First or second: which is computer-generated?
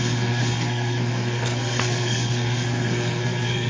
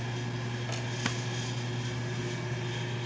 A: first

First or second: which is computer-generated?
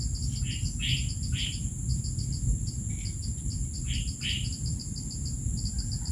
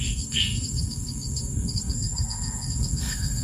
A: second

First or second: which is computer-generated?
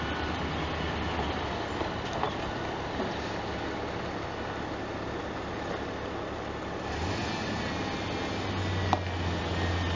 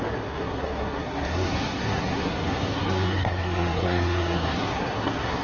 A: second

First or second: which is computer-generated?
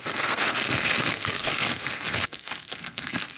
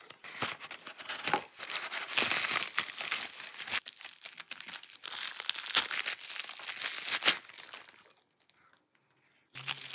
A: first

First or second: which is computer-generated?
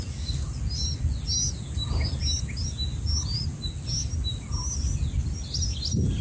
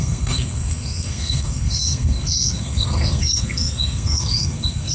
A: second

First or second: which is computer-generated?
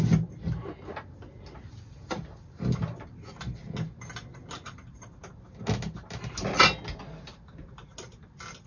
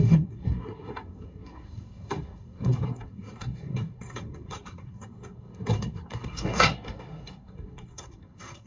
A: second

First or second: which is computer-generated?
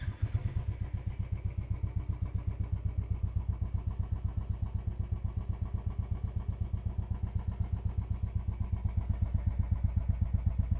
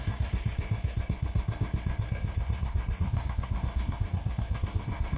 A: second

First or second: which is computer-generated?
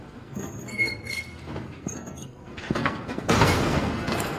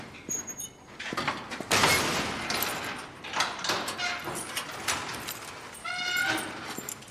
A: first